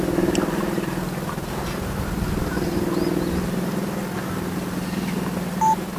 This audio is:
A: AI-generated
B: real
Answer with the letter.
B